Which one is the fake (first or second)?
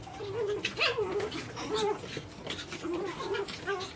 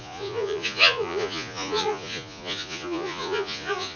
second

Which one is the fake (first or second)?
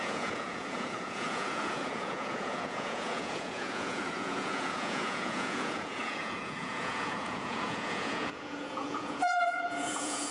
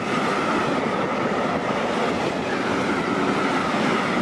first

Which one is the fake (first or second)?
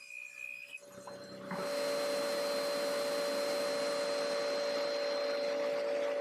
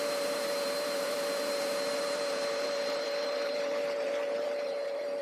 second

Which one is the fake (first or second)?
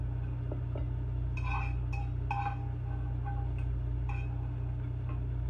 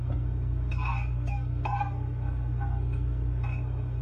second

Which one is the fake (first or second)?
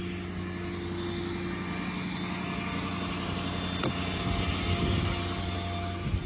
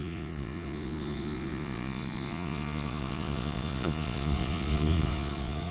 second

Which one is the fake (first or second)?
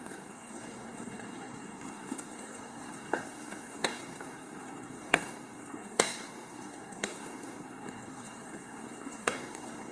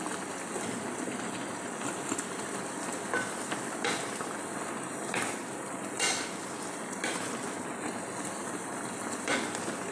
first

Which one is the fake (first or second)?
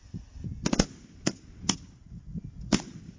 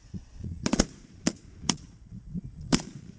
second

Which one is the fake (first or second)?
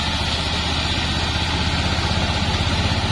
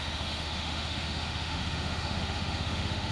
second